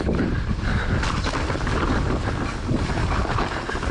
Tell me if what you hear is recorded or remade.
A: recorded